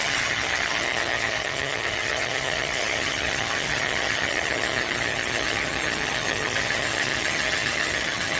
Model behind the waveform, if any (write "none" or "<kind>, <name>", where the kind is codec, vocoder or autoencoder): vocoder, HiFi-GAN